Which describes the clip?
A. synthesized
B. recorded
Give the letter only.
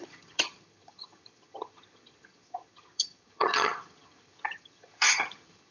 A